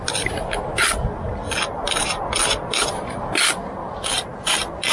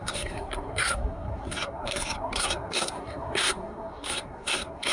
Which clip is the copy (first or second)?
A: second